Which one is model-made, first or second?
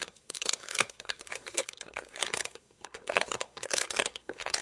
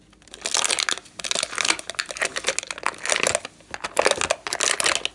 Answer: first